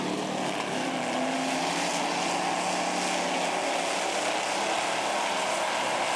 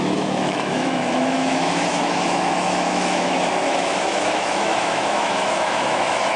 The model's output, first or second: second